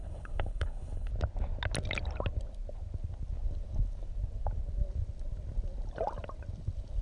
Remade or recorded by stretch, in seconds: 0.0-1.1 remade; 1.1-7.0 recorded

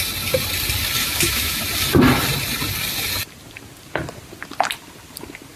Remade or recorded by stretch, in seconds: 0.0-1.0 recorded; 1.0-1.6 remade; 1.6-5.6 recorded

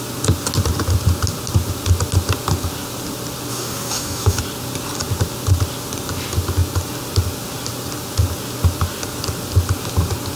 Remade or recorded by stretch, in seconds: 0.0-3.5 recorded; 3.5-4.4 remade; 4.4-10.4 recorded

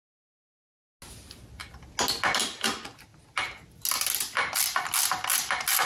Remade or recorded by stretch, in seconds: 0.0-5.9 recorded